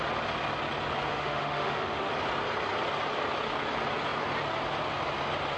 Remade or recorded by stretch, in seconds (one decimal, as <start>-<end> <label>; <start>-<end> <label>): 0.0-1.1 recorded; 1.1-2.1 remade; 2.1-5.6 recorded